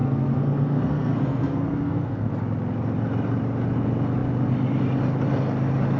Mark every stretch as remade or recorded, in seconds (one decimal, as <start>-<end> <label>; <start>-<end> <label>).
0.0-2.3 remade; 2.3-6.0 recorded